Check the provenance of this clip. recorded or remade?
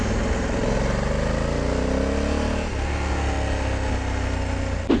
recorded